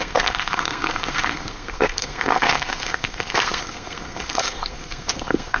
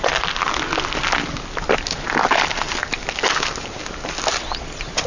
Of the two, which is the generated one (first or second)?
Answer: first